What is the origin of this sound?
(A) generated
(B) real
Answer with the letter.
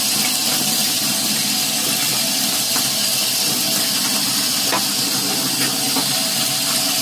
B